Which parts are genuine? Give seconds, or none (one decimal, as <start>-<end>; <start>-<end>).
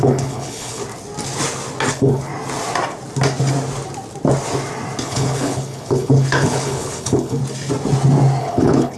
0.8-1.9; 2.3-5.0; 7.4-8.4